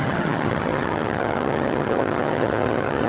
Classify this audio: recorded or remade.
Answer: remade